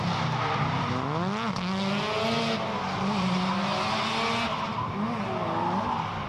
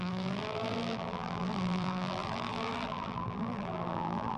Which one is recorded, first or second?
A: first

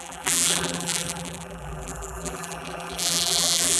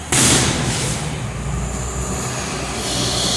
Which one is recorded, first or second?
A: second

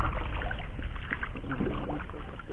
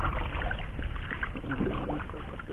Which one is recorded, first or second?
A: first